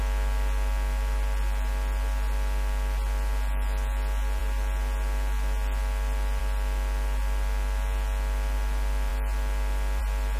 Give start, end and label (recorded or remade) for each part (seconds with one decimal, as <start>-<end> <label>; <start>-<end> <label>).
0.0-10.4 recorded